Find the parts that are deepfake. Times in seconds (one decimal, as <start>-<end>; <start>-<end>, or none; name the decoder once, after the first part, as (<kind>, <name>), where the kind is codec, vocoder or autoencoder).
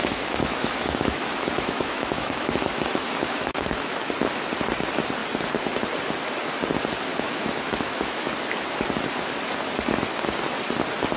0.0-4.1 (autoencoder, DAC-VAE); 7.1-8.3